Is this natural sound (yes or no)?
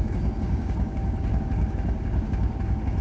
no